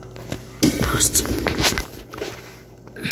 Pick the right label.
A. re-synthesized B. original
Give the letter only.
B